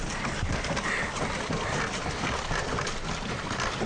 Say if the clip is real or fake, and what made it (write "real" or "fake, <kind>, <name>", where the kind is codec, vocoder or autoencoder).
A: real